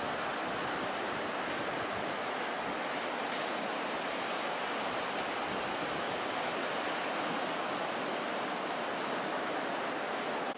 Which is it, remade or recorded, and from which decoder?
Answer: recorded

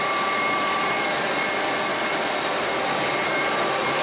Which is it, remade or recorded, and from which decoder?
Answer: remade, vocoder, BigVGAN v2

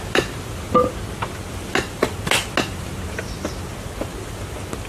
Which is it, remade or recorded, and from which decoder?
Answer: recorded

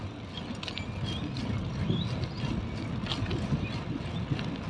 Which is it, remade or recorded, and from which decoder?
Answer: recorded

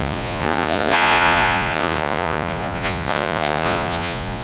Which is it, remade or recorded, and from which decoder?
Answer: remade, vocoder, Vocos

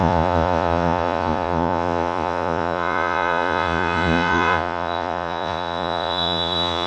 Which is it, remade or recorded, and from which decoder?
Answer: remade, vocoder, Vocos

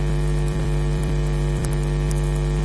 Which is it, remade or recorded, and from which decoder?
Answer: remade, vocoder, BigVGAN v2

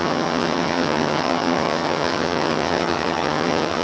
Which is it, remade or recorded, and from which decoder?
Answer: remade, vocoder, HiFi-GAN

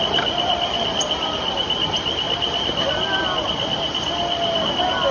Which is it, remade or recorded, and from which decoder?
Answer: recorded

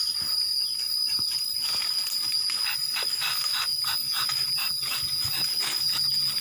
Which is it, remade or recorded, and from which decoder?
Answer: recorded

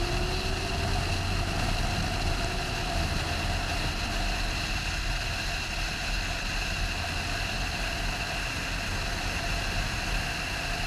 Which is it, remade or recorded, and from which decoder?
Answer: recorded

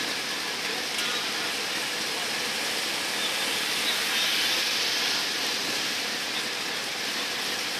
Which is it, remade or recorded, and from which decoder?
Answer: recorded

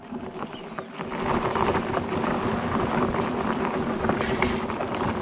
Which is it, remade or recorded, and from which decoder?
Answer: recorded